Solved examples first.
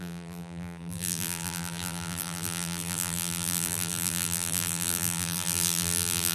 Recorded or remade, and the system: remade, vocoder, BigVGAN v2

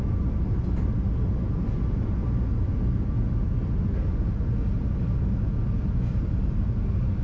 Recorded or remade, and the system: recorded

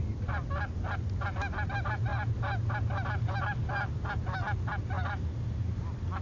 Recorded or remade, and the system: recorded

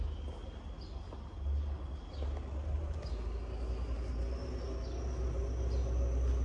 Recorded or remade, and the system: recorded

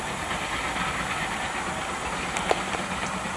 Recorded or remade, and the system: recorded